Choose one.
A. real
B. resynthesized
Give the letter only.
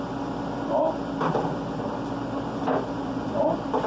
A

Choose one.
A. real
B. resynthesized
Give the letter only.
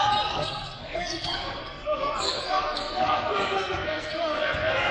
B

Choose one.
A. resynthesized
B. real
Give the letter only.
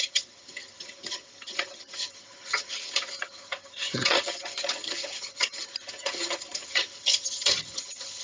A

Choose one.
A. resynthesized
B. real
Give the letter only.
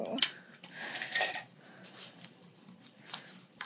A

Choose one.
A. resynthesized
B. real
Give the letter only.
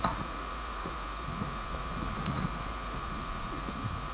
A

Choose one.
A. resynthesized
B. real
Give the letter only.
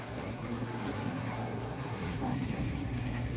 A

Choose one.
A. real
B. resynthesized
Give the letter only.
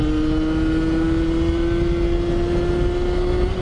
A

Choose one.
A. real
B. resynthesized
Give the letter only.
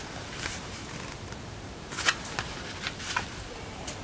A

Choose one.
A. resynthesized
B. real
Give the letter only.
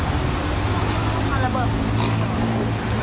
B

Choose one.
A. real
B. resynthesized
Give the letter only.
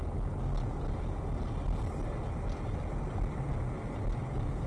A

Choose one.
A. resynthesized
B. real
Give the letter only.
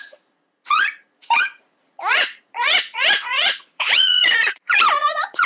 A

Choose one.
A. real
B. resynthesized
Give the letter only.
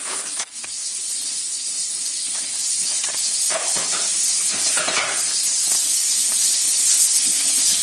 B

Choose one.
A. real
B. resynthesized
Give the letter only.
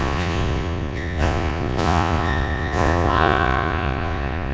B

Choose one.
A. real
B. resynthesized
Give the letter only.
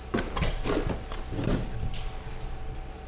A